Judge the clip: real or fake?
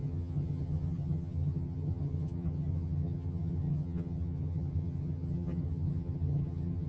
fake